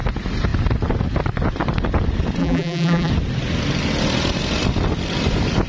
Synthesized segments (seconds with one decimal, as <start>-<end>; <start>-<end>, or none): 2.4-3.1